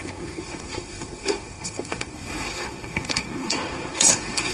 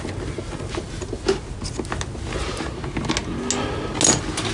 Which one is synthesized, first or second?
first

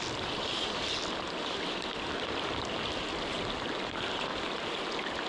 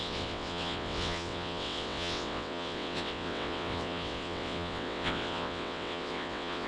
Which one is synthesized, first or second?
second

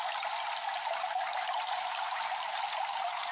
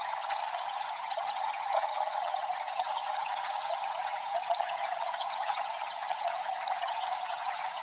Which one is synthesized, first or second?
second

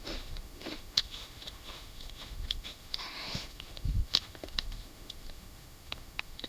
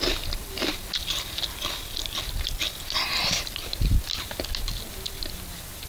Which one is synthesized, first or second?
first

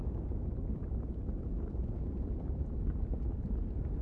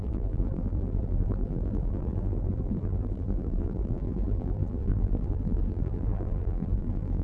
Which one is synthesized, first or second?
second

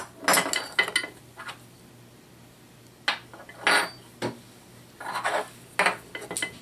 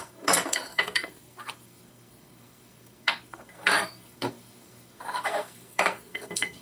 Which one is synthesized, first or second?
second